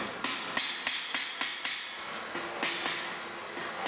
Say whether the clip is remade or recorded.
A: recorded